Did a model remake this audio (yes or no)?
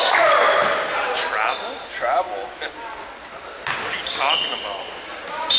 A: no